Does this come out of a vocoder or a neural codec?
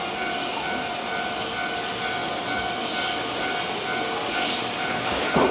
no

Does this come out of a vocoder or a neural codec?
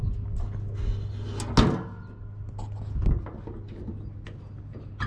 no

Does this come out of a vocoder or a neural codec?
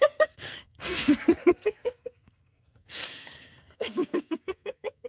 yes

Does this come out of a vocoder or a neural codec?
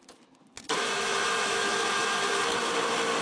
no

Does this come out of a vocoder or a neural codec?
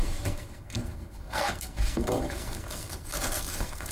yes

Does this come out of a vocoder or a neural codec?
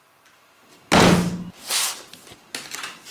no